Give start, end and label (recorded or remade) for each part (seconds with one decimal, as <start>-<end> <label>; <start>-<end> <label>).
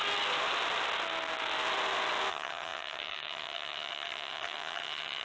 0.0-2.3 recorded; 2.3-5.2 remade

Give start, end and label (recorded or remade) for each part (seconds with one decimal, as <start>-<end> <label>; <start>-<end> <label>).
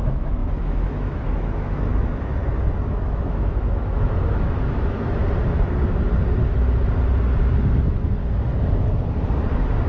0.0-2.4 remade; 2.4-2.9 recorded; 2.9-5.2 remade; 5.2-7.8 recorded; 7.8-8.2 remade; 8.2-9.9 recorded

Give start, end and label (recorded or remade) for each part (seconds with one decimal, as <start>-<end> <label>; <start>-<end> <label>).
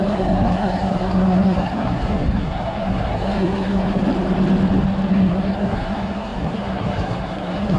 0.0-4.0 remade; 4.0-5.1 recorded; 5.1-7.8 remade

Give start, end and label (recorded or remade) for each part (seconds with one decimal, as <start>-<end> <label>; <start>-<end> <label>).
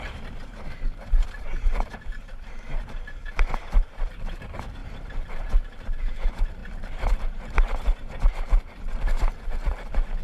0.0-10.2 remade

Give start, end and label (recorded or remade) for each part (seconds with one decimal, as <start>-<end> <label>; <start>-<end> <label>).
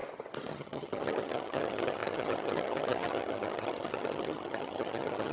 0.0-0.5 recorded; 0.5-5.3 remade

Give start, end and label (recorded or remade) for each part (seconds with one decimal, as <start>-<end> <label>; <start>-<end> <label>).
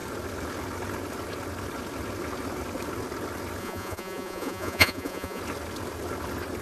0.0-3.6 recorded; 3.6-5.4 remade; 5.4-6.6 recorded